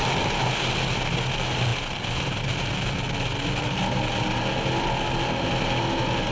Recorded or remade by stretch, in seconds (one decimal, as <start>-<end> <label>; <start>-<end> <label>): 0.0-6.3 recorded